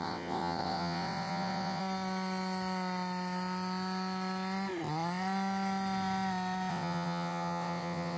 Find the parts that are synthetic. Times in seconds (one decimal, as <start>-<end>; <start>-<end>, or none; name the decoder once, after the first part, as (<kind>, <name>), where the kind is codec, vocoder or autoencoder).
0.0-1.8 (vocoder, WaveNeXt); 6.7-8.2